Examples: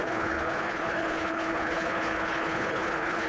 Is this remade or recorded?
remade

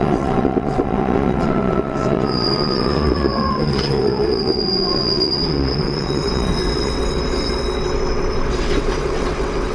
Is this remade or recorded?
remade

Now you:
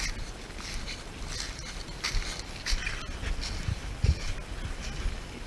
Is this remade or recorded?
recorded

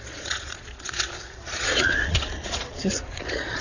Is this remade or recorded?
remade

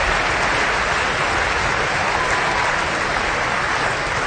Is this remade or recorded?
recorded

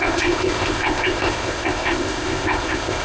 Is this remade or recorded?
remade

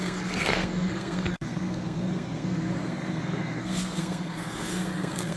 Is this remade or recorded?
remade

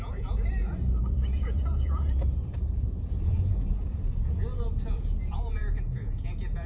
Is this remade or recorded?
remade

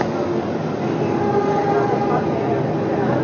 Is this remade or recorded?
recorded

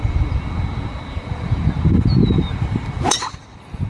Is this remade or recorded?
recorded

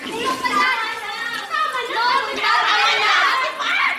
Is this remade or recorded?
recorded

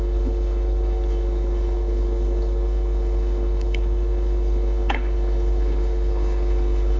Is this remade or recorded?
remade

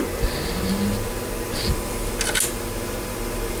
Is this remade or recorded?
recorded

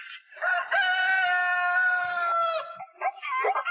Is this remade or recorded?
recorded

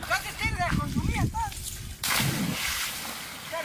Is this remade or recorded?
recorded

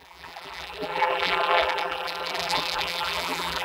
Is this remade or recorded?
remade